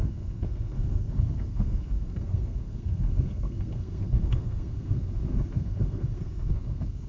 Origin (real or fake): fake